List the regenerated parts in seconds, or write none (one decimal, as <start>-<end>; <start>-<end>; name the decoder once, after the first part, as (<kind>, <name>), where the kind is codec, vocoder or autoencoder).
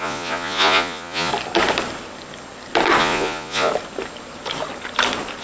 0.0-1.3 (vocoder, Vocos); 3.0-3.7